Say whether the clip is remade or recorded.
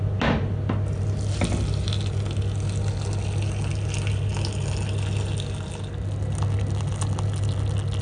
recorded